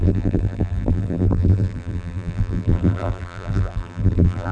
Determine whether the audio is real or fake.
fake